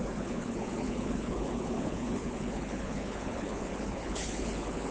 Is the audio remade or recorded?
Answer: remade